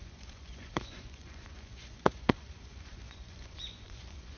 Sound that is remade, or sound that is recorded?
remade